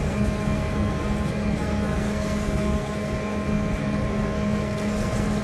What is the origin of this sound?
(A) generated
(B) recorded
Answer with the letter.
A